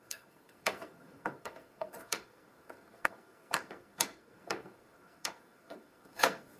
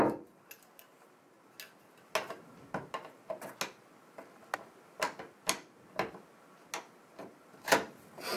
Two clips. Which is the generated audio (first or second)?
first